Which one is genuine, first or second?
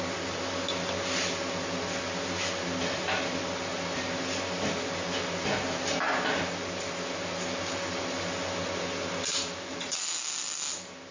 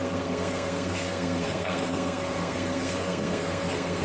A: first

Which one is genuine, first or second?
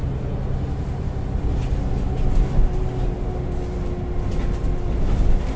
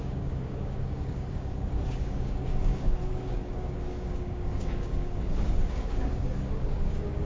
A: first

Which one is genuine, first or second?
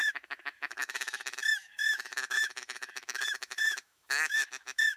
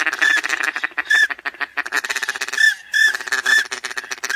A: second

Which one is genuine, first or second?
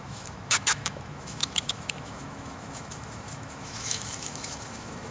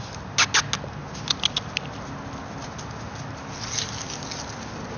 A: second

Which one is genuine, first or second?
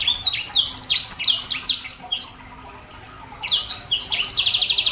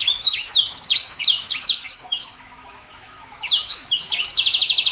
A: first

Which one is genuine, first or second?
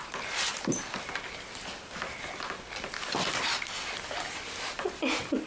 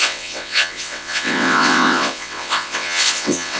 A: first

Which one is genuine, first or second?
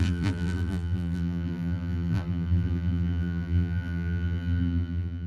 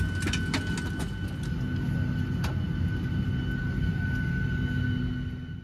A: second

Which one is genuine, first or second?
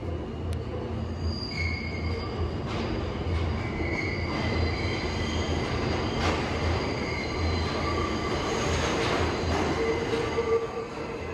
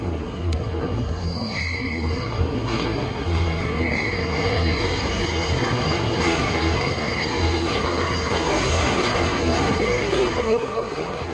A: first